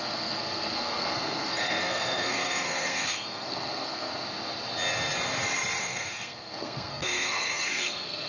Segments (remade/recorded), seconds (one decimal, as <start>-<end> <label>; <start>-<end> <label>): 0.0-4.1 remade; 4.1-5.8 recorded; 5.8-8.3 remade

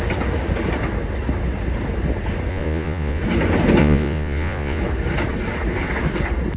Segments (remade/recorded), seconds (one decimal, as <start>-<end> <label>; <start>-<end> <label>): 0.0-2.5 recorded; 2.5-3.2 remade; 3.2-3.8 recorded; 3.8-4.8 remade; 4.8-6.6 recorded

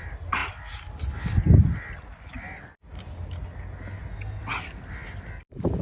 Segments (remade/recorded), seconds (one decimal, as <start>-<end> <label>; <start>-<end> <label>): 0.0-5.8 recorded